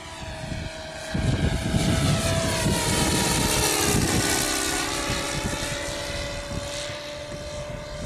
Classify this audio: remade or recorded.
recorded